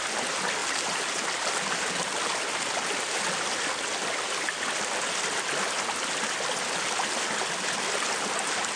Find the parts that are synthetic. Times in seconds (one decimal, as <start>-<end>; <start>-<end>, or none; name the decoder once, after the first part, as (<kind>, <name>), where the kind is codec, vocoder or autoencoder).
0.6-2.1 (vocoder, BigVGAN v2)